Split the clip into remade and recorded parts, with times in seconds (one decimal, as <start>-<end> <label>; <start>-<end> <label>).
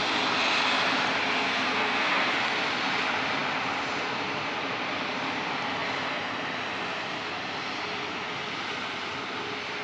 0.0-1.4 recorded; 1.4-2.3 remade; 2.3-9.8 recorded